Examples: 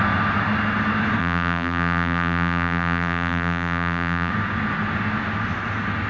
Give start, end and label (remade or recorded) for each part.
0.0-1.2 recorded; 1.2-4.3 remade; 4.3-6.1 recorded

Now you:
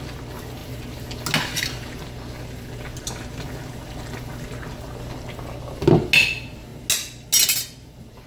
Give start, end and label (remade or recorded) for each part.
0.0-8.3 recorded